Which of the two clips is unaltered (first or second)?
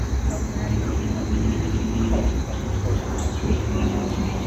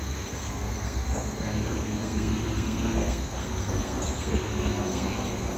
first